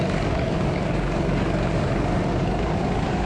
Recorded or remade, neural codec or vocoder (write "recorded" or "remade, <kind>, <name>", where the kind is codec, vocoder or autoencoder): remade, codec, DAC